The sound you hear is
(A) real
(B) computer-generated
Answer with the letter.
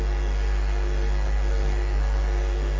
B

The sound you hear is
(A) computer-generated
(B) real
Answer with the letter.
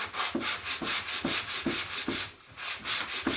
B